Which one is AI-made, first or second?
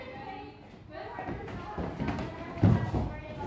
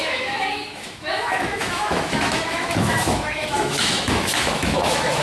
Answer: second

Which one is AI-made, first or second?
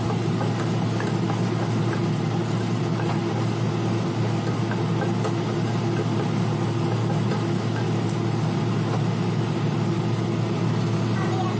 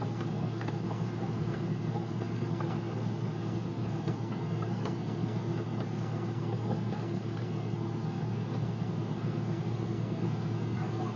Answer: second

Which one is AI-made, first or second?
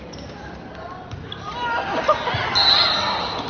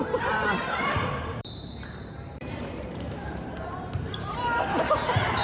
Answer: second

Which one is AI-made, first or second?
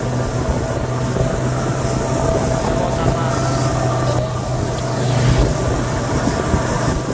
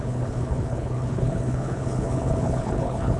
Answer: second